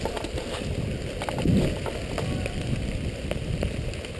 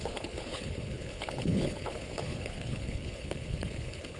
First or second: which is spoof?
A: second